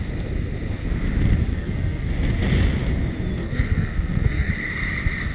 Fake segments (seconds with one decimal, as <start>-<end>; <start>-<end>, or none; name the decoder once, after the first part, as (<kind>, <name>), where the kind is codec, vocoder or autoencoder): 1.5-2.1 (codec, SNAC); 3.4-4.5